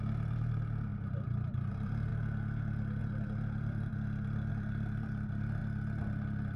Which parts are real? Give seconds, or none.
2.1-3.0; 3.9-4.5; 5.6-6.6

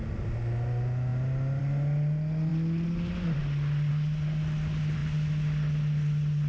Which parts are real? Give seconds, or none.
0.0-6.5

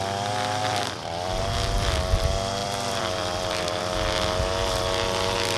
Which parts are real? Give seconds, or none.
0.0-0.6; 1.4-2.6; 3.8-5.6

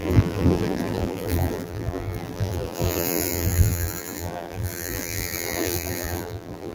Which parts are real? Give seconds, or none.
none

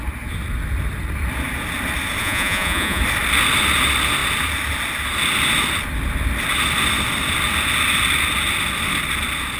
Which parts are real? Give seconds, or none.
0.0-2.2; 3.0-9.6

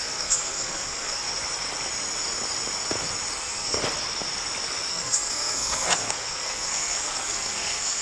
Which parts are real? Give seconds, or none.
1.2-3.4; 3.8-4.9